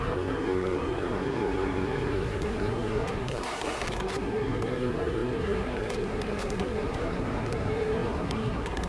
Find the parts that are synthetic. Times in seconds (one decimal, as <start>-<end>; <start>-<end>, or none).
0.0-8.9